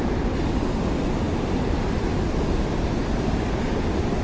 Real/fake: fake